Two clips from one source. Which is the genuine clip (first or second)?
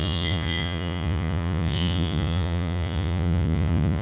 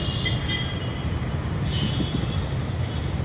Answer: second